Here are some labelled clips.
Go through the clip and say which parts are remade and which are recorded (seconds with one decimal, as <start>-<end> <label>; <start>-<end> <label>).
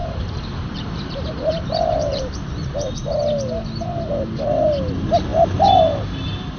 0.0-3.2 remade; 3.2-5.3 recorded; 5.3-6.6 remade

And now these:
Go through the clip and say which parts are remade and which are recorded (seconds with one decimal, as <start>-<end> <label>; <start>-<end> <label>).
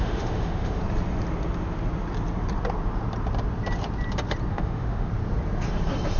0.0-0.8 remade; 0.8-4.5 recorded; 4.5-5.1 remade; 5.1-6.2 recorded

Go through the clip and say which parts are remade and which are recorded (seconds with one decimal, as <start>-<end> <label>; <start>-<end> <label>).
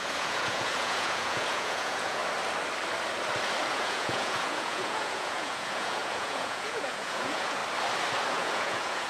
0.0-2.2 remade; 2.2-3.7 recorded; 3.7-7.6 remade; 7.6-8.3 recorded; 8.3-9.1 remade